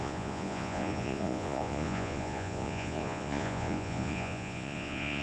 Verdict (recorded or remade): remade